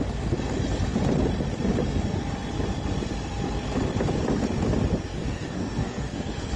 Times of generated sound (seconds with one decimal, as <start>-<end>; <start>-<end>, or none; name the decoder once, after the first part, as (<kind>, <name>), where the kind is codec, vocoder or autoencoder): 5.1-6.6 (codec, SNAC)